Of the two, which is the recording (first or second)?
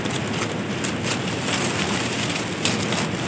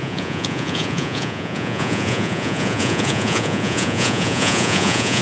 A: first